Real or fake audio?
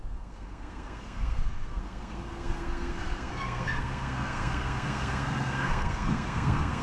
fake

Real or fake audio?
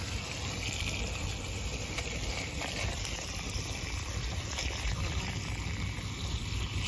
real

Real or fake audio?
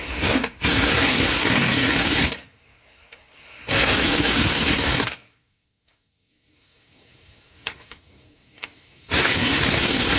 fake